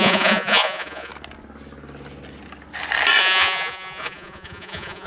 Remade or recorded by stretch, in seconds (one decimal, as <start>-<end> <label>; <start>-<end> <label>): 0.0-1.1 remade; 1.1-3.2 recorded; 3.2-5.1 remade